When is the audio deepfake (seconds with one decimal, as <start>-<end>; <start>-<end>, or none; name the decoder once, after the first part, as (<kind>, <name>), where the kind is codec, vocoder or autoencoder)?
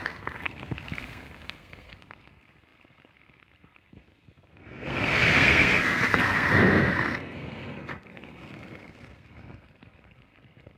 0.0-10.8 (codec, SNAC)